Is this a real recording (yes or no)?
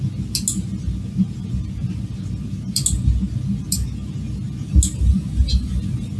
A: yes